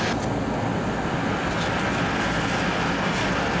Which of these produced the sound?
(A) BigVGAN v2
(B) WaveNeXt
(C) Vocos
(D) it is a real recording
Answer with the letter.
D